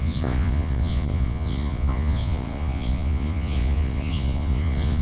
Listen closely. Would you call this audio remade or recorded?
remade